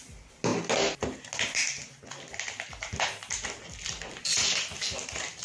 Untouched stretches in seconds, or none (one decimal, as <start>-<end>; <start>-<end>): 0.0-5.4

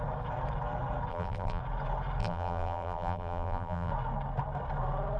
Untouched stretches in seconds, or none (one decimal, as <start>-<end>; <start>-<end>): 0.0-1.1; 1.6-2.2; 3.9-5.2

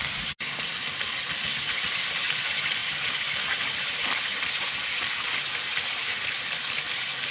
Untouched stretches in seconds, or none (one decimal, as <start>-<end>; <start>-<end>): 0.0-7.3

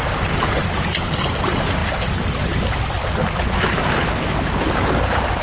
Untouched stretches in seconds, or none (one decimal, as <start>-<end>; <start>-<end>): 0.6-1.2; 1.8-5.0

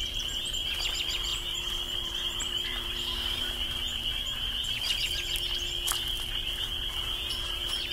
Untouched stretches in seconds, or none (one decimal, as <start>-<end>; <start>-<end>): 0.0-1.3; 4.1-7.9

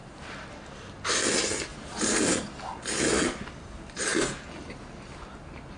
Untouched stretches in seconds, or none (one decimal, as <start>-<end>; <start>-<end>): 0.5-1.7; 2.2-5.8